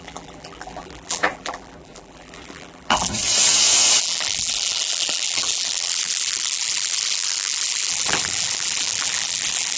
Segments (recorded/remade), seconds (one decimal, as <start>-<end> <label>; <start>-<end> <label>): 0.0-3.1 remade; 3.1-4.0 recorded; 4.0-9.8 remade